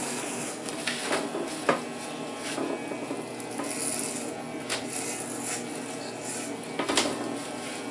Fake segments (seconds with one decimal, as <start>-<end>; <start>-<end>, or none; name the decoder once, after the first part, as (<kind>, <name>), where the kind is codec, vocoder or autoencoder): 0.0-0.7 (codec, SNAC)